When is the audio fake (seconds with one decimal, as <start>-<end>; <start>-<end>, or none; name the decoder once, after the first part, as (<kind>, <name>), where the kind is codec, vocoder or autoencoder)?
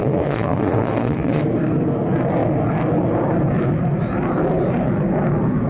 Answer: 0.0-1.4 (vocoder, Vocos)